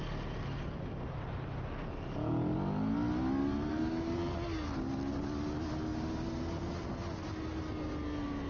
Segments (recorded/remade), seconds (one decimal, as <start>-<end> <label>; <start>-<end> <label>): 0.0-3.4 recorded; 3.4-4.3 remade; 4.3-5.9 recorded; 5.9-6.4 remade; 6.4-8.5 recorded